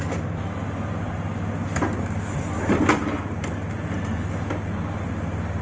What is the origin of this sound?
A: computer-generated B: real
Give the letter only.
B